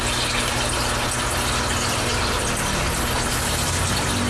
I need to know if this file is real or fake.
real